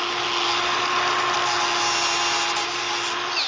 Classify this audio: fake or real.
real